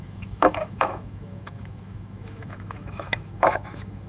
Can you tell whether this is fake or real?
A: fake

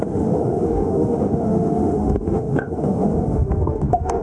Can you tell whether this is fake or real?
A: fake